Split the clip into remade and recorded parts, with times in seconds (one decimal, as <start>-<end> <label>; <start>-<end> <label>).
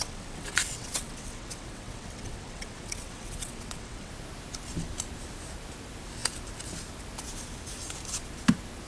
0.0-4.1 remade; 4.1-8.9 recorded